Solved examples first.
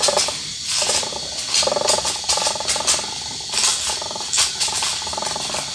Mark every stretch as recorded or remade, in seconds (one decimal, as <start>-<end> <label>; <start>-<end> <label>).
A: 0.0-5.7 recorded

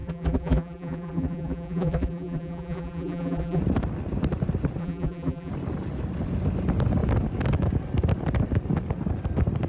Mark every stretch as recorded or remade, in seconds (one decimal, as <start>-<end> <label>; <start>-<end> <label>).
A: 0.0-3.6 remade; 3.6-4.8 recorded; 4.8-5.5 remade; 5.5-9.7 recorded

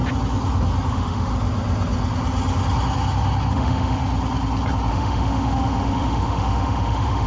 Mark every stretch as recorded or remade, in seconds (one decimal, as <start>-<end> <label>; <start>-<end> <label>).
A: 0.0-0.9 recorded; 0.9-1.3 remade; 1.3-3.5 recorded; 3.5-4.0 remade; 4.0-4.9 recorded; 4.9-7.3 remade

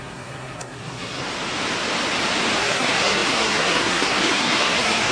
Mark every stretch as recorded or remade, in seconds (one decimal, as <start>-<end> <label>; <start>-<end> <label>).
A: 0.0-1.2 remade; 1.2-2.6 recorded; 2.6-5.1 remade